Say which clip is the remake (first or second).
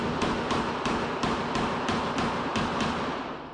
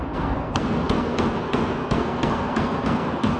second